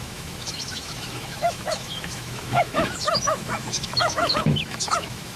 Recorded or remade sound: remade